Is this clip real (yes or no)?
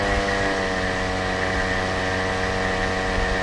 yes